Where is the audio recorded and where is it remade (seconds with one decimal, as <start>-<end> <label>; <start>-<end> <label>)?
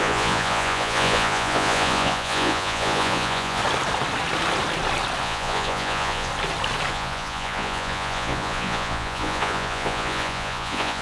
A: 0.0-3.6 remade; 3.6-5.2 recorded; 5.2-6.3 remade; 6.3-6.9 recorded; 6.9-11.0 remade